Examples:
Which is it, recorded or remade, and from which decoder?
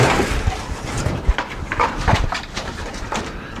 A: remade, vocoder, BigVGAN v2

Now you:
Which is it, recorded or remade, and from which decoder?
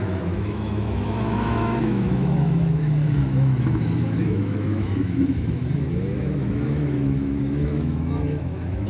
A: remade, autoencoder, DAC-VAE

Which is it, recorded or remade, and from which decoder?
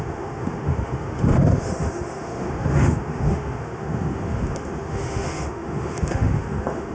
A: remade, autoencoder, DAC-VAE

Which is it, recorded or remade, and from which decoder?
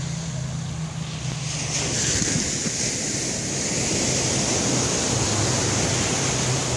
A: recorded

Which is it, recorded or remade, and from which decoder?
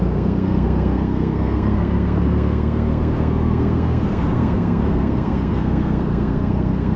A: remade, codec, SNAC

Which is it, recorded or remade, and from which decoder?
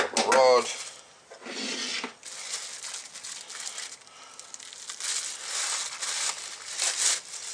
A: recorded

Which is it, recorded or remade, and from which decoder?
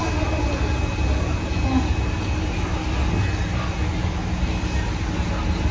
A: recorded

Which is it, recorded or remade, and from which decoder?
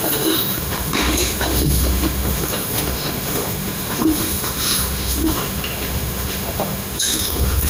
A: remade, autoencoder, DAC-VAE